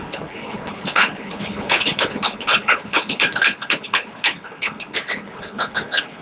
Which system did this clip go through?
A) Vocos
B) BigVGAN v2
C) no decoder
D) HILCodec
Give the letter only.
D